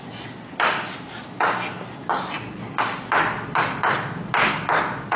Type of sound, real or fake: real